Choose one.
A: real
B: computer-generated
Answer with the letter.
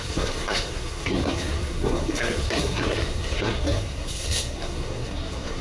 B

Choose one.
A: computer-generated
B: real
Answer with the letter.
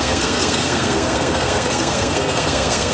A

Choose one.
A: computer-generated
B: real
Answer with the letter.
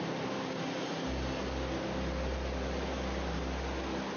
B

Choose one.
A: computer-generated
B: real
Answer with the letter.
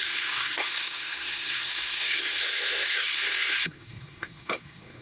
A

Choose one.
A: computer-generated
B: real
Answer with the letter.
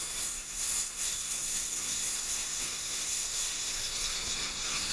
A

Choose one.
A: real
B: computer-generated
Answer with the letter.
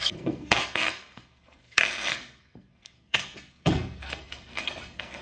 B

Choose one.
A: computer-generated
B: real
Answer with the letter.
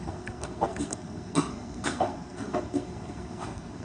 A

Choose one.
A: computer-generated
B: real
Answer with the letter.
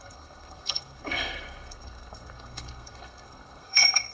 A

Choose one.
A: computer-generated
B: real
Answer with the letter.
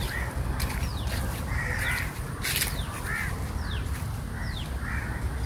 B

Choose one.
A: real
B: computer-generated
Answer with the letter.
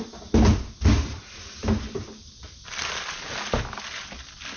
A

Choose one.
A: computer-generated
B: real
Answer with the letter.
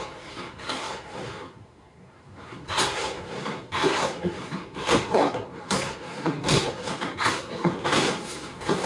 A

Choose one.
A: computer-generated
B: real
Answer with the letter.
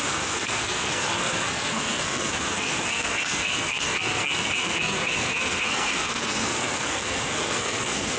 A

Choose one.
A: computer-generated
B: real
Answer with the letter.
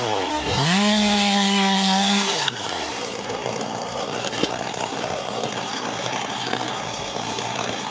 A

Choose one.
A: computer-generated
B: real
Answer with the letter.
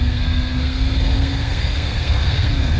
A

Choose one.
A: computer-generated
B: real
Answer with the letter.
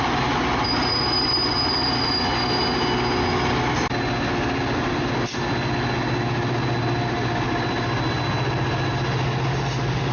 B